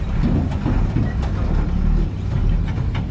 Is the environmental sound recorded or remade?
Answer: recorded